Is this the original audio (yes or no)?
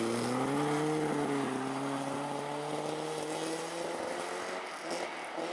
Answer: yes